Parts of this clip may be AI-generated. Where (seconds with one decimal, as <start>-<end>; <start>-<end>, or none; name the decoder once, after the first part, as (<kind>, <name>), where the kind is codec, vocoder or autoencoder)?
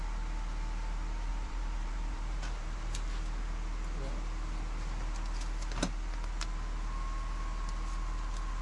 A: 1.3-2.8 (vocoder, BigVGAN v2)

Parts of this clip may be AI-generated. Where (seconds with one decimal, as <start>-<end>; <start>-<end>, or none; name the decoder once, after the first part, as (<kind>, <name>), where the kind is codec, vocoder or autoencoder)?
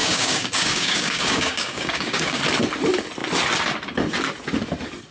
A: 0.0-2.4 (codec, DAC)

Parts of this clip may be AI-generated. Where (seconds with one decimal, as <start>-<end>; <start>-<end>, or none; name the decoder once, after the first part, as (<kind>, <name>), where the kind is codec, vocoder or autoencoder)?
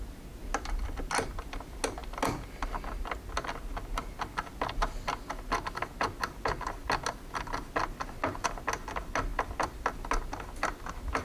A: none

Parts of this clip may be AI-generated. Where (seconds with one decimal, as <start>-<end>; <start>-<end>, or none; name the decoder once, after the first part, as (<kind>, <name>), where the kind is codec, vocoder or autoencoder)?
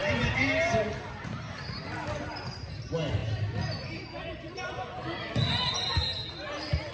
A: none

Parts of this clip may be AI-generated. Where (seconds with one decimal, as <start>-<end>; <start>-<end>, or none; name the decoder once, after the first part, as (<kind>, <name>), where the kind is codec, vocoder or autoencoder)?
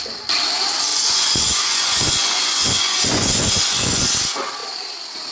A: 0.9-4.1 (vocoder, Vocos)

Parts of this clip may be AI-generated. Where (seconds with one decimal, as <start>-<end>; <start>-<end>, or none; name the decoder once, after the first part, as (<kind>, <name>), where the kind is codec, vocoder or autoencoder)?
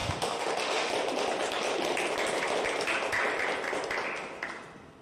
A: 0.0-0.9 (autoencoder, DAC-VAE)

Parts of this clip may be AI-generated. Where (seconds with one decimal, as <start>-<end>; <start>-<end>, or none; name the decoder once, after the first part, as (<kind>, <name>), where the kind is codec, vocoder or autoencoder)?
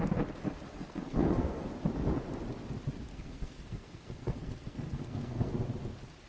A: 0.7-1.7 (codec, SNAC); 3.1-5.5